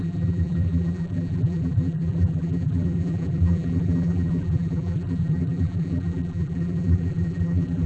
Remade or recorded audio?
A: remade